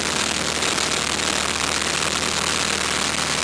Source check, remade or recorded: recorded